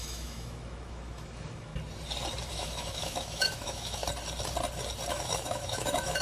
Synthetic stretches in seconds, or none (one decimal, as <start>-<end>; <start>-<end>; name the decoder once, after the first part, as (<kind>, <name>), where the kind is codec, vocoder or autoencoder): 0.0-1.7 (autoencoder, DAC-VAE); 2.5-4.0; 5.1-6.2